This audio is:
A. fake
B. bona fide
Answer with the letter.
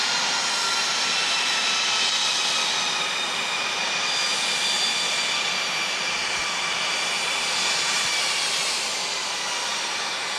B